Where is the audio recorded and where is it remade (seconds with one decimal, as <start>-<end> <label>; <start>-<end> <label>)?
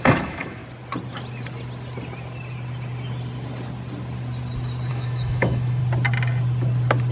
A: 0.0-0.6 remade; 0.6-4.9 recorded; 4.9-5.8 remade; 5.8-7.1 recorded